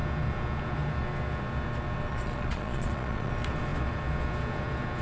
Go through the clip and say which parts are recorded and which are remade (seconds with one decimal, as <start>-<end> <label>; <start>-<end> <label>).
0.0-2.1 recorded; 2.1-3.3 remade; 3.3-5.0 recorded